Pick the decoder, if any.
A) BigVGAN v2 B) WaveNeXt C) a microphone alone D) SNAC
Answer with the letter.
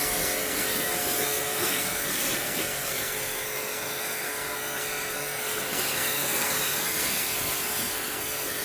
D